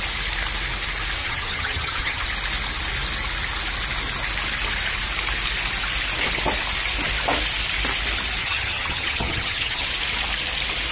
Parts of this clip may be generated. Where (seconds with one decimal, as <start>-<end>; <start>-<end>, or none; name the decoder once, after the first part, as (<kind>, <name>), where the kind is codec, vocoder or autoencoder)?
1.2-2.2 (vocoder, HiFi-GAN); 8.4-9.9